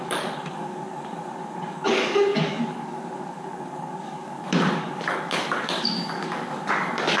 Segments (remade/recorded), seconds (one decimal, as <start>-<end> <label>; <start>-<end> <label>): 0.0-7.2 remade